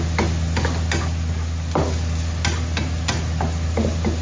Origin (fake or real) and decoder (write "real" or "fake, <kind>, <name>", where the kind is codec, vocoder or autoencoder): real